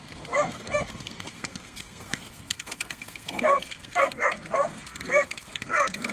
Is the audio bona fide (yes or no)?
no